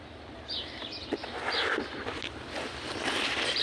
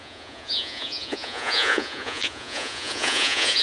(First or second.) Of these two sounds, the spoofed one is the second